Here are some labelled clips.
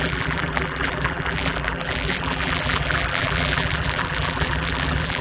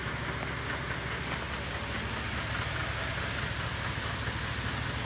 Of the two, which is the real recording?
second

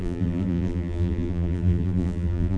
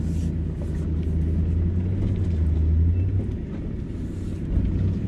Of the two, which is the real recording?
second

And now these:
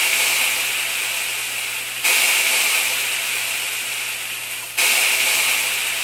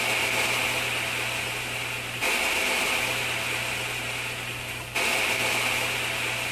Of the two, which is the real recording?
first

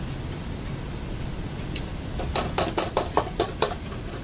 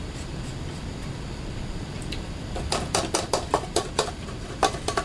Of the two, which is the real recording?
first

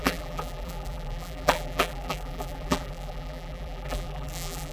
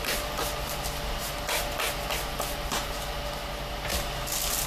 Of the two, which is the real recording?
second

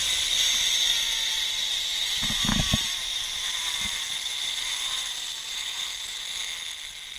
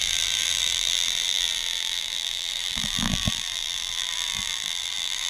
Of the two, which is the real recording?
first